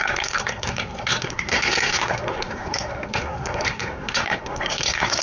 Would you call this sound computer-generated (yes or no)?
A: yes